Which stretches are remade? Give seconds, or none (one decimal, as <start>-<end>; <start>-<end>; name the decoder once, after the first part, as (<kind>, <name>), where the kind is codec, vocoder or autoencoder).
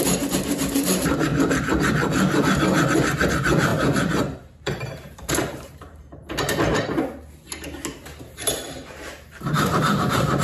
0.0-1.3 (vocoder, BigVGAN v2); 3.3-6.2; 8.2-10.4